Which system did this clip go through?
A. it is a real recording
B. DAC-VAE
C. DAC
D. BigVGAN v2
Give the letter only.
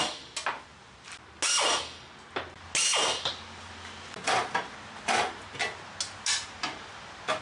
A